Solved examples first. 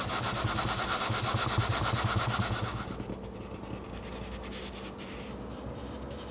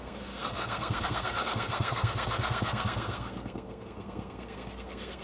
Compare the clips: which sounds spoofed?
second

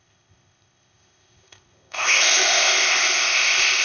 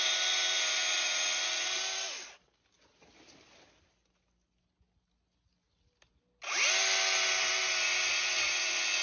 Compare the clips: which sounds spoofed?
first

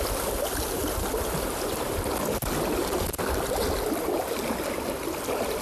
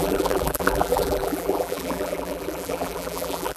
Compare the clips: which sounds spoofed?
second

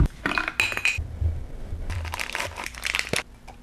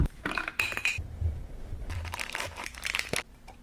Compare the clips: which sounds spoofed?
second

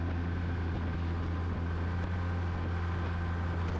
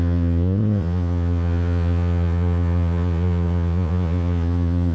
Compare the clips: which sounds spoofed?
second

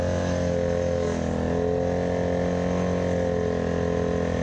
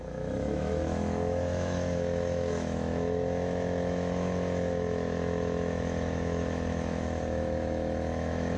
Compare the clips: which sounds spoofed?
second